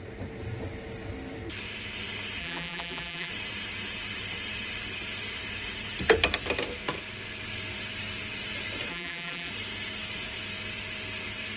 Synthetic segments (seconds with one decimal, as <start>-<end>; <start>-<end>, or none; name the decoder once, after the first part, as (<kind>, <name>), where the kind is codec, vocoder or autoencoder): 2.4-3.3 (vocoder, BigVGAN v2); 8.9-9.5